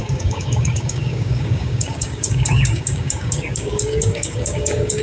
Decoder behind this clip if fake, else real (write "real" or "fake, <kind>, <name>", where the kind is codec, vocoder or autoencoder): fake, codec, DAC